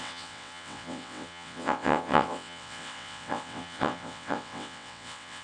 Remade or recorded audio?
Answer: remade